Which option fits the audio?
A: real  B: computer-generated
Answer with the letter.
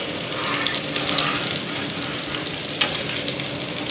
A